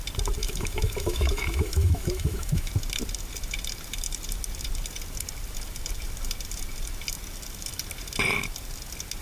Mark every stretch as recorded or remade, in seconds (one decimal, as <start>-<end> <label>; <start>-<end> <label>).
0.0-0.4 recorded; 0.4-2.7 remade; 2.7-9.2 recorded